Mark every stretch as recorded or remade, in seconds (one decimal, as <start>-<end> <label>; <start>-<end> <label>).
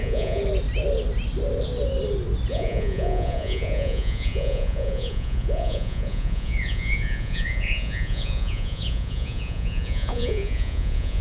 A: 0.0-0.4 remade; 0.4-2.5 recorded; 2.5-11.2 remade